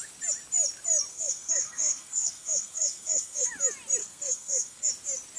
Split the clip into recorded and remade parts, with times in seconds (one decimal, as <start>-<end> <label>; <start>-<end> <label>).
0.0-1.1 recorded; 1.1-3.5 remade; 3.5-4.0 recorded; 4.0-4.9 remade; 4.9-5.4 recorded